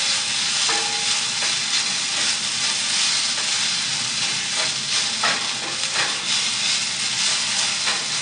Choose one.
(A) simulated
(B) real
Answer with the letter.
B